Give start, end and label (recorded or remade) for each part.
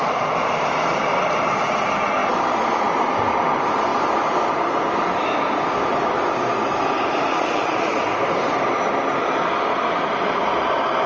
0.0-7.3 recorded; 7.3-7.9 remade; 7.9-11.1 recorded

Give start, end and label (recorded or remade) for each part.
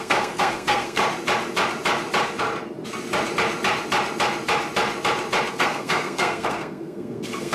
0.0-1.0 remade; 1.0-5.5 recorded; 5.5-7.5 remade